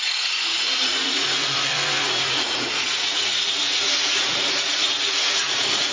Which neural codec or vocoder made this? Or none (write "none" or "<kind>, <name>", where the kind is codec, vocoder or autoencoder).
vocoder, Vocos